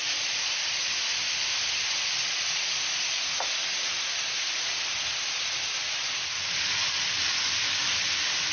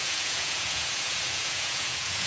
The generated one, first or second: second